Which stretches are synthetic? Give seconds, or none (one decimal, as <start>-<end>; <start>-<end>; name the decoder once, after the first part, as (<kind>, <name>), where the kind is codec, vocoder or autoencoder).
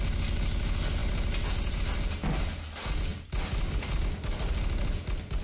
none